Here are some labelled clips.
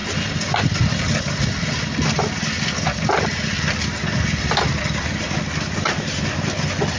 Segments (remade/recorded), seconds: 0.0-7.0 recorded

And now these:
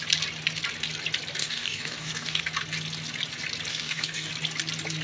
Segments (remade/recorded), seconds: 0.0-1.4 recorded; 1.4-2.4 remade; 2.4-3.7 recorded; 3.7-4.3 remade; 4.3-5.0 recorded

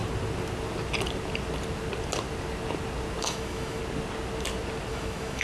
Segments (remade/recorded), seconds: 0.0-3.2 recorded; 3.2-3.8 remade; 3.8-4.9 recorded; 4.9-5.4 remade

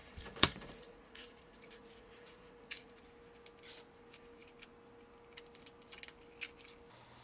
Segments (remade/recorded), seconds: 0.0-3.0 remade; 3.0-7.2 recorded

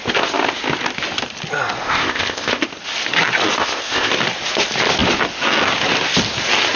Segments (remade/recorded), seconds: 0.0-1.8 recorded; 1.8-2.6 remade; 2.6-3.6 recorded; 3.6-4.1 remade; 4.1-6.8 recorded